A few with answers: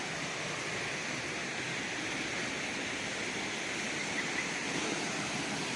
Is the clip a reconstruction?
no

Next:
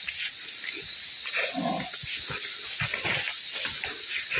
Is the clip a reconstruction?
no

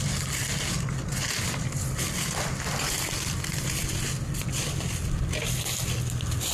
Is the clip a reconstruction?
no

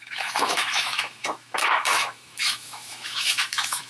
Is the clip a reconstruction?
yes